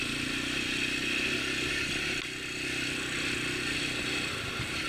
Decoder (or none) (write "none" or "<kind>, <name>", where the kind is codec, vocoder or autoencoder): none